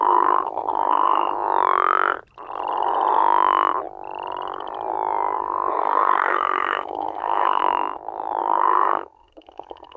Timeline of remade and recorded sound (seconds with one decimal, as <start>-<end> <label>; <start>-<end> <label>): 0.0-1.3 remade; 1.3-5.4 recorded; 5.4-7.6 remade; 7.6-8.4 recorded; 8.4-10.0 remade